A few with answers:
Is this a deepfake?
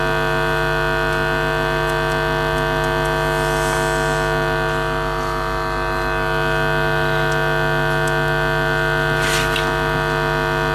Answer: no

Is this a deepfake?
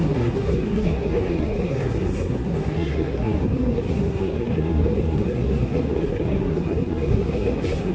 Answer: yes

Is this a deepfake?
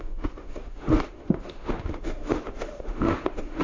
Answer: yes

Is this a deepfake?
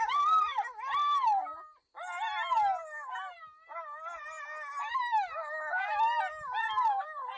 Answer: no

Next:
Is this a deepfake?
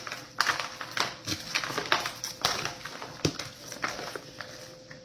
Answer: no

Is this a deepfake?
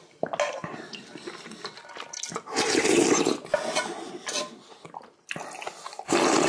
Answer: no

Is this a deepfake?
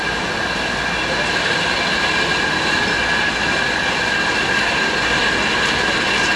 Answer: no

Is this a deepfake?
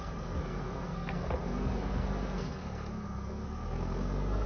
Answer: yes